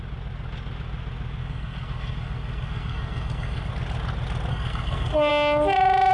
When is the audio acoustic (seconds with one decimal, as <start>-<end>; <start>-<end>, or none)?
0.0-1.4; 3.7-4.5; 5.3-6.1